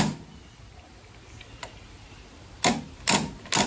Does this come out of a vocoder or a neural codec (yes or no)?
no